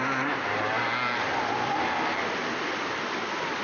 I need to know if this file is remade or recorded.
recorded